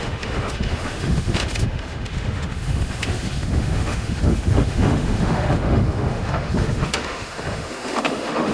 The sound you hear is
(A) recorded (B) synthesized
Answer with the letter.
B